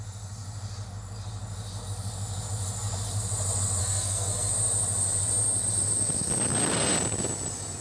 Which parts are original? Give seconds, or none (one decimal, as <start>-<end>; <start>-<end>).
0.0-3.8; 4.5-7.8